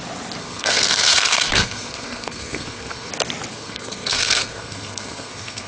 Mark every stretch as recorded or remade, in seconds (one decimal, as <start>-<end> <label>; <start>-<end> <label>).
0.0-0.4 recorded; 0.4-3.1 remade; 3.1-3.5 recorded; 3.5-5.7 remade